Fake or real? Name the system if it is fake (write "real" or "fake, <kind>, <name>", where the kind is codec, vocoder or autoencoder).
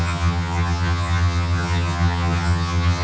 fake, vocoder, HiFi-GAN